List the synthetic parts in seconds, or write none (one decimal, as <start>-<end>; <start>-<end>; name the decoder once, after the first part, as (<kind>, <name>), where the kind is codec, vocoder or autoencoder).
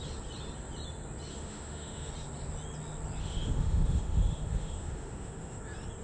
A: 1.3-2.1 (autoencoder, DAC-VAE); 3.2-5.6